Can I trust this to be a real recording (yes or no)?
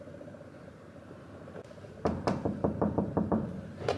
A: no